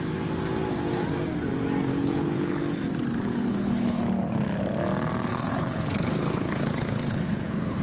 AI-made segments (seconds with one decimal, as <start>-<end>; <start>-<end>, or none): 1.9-2.6; 3.4-4.0; 5.3-7.8